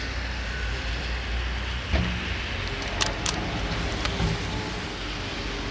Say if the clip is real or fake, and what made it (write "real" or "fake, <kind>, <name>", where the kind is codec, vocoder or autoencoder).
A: real